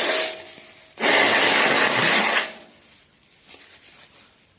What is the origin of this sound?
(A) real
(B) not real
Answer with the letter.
A